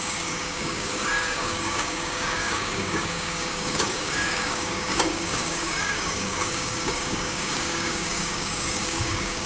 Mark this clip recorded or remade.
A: remade